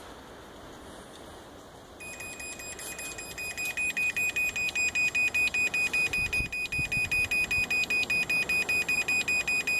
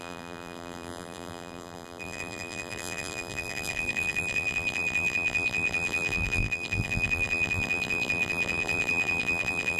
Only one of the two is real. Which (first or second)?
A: first